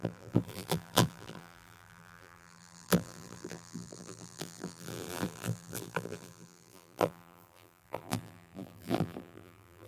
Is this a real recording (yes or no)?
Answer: no